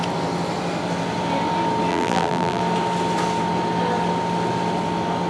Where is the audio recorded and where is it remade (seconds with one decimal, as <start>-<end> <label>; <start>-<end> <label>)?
0.0-1.9 recorded; 1.9-2.6 remade; 2.6-5.3 recorded